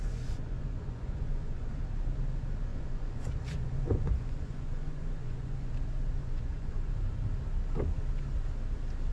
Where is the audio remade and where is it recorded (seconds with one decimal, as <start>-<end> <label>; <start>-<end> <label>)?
0.0-1.7 remade; 1.7-2.7 recorded; 2.7-5.7 remade; 5.7-6.2 recorded; 6.2-6.9 remade; 6.9-9.1 recorded